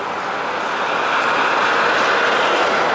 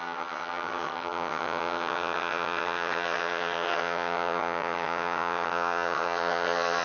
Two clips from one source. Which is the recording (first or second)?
first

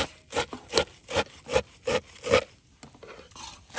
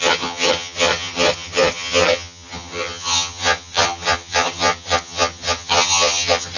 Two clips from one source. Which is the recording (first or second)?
first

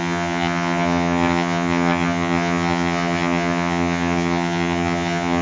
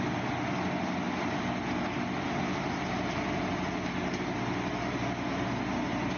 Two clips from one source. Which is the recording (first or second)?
second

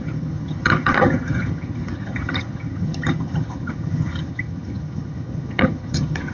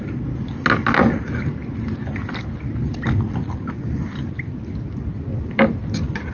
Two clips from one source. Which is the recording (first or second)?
second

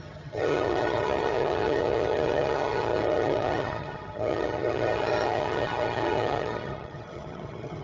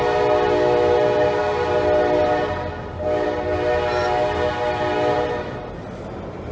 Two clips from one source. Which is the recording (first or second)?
second